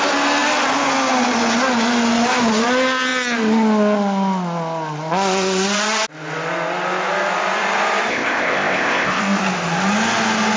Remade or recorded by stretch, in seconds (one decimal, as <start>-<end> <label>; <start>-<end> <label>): 0.0-8.1 recorded; 8.1-9.4 remade; 9.4-10.6 recorded

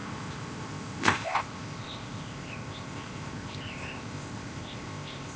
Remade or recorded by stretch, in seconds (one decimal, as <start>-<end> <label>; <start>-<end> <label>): 0.0-5.4 remade

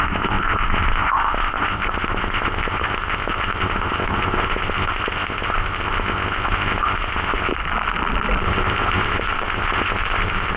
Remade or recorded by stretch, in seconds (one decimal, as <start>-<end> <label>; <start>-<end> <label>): 0.0-7.5 remade; 7.5-8.4 recorded; 8.4-10.6 remade

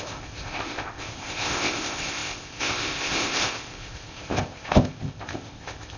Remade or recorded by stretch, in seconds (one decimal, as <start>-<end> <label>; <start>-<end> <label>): 0.0-6.0 remade

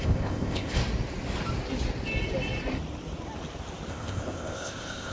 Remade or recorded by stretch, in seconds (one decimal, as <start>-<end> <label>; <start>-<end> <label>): 0.0-0.8 remade; 0.8-3.9 recorded; 3.9-5.1 remade

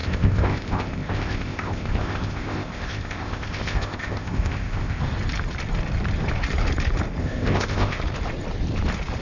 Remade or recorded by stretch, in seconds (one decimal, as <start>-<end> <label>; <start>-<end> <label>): 0.0-5.0 remade; 5.0-7.2 recorded; 7.2-8.0 remade; 8.0-9.2 recorded

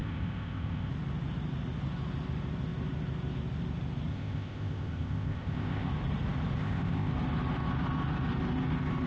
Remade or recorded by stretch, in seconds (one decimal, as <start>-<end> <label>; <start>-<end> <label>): 0.0-0.9 remade; 0.9-4.1 recorded; 4.1-5.9 remade; 5.9-6.6 recorded; 6.6-7.1 remade; 7.1-9.1 recorded

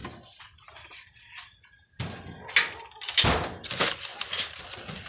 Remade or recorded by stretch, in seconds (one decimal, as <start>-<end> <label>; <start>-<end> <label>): 0.0-5.1 recorded